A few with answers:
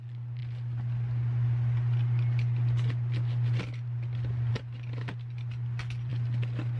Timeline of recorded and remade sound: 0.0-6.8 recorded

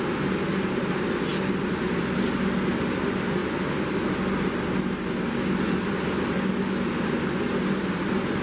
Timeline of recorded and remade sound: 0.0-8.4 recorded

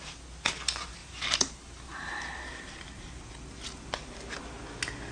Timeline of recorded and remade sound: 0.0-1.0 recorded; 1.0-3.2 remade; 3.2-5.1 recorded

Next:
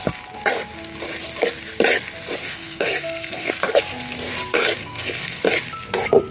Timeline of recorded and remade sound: 0.0-2.4 recorded; 2.4-3.5 remade; 3.5-4.8 recorded; 4.8-5.4 remade; 5.4-6.3 recorded

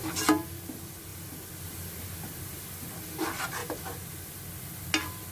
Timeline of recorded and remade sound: 0.0-5.3 recorded

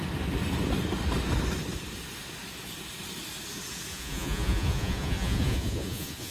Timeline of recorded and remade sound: 0.0-3.9 recorded; 3.9-6.3 remade

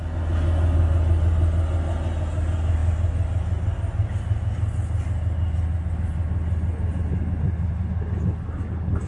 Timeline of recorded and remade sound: 0.0-9.1 recorded